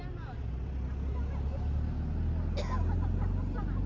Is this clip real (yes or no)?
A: yes